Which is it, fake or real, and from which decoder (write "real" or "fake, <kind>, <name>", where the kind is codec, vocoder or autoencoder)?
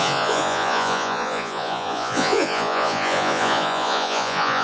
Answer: fake, vocoder, Vocos